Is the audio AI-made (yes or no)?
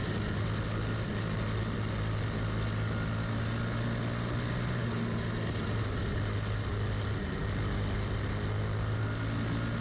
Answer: no